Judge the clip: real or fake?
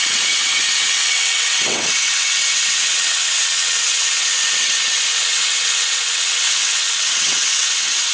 fake